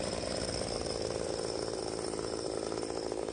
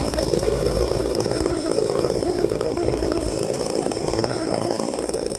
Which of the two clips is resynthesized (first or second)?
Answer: second